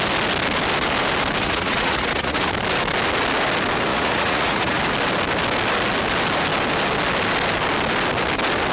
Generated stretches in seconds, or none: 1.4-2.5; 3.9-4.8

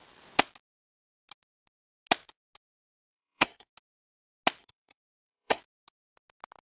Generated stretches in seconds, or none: 2.9-3.7; 4.6-5.6